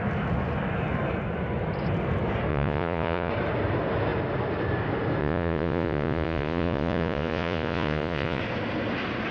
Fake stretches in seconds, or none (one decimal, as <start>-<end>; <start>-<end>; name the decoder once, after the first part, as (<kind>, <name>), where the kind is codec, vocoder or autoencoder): 2.5-3.3 (vocoder, Vocos); 5.2-8.4